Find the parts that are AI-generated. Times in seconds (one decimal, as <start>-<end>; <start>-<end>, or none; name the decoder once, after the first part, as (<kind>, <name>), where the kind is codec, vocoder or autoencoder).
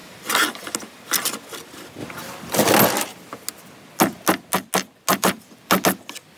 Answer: 0.0-0.6 (vocoder, BigVGAN v2); 5.1-5.7